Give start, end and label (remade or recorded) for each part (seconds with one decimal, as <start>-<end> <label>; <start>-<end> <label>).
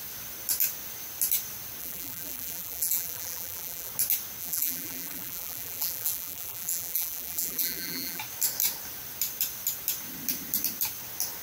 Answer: 0.0-1.8 recorded; 1.8-3.9 remade; 3.9-4.4 recorded; 4.4-8.2 remade; 8.2-11.4 recorded